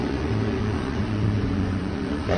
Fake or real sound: fake